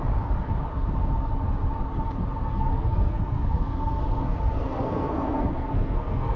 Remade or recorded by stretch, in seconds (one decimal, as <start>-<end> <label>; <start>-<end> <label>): 0.0-2.4 recorded; 2.4-6.4 remade